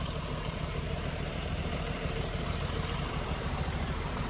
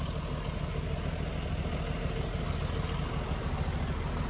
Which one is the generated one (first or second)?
first